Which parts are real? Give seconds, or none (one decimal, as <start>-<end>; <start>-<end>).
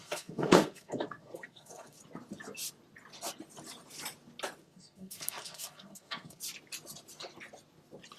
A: 2.0-4.6; 6.4-8.2